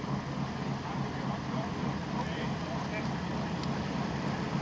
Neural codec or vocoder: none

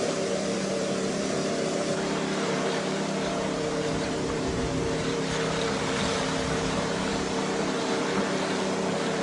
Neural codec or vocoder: vocoder, BigVGAN v2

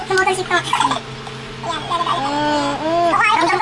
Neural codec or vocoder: none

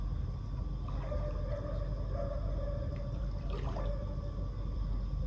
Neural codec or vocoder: none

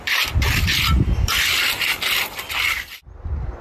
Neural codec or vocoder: vocoder, BigVGAN v2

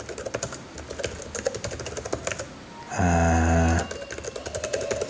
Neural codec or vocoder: none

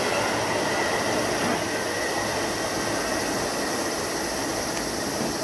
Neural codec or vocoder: none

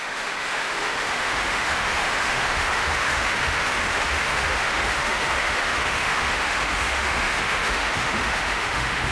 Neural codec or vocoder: autoencoder, DAC-VAE